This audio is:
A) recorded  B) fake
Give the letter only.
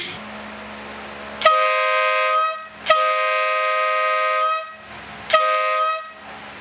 A